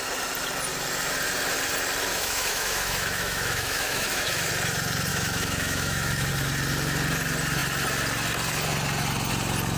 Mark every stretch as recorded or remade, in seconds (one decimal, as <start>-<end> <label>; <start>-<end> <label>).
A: 0.0-2.1 recorded; 2.1-4.5 remade; 4.5-5.1 recorded; 5.1-6.3 remade; 6.3-9.8 recorded